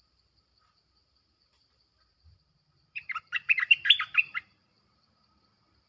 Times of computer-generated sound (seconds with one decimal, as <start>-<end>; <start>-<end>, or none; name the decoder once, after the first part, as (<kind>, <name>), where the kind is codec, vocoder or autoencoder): 0.0-5.9 (vocoder, BigVGAN v2)